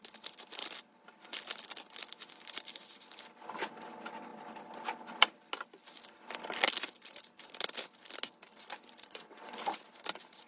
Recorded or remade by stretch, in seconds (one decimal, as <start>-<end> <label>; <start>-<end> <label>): 0.0-9.0 recorded; 9.0-9.5 remade; 9.5-10.5 recorded